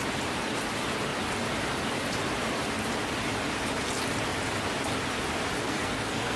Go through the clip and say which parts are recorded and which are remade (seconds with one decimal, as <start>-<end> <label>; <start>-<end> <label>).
0.0-5.6 recorded; 5.6-6.4 remade